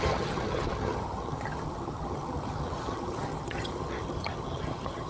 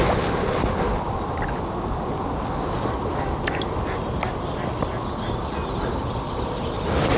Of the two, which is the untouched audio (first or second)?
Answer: second